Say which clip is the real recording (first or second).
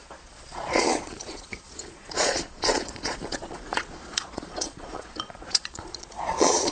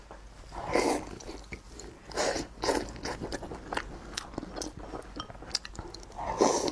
second